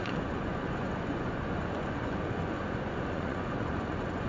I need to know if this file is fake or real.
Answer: fake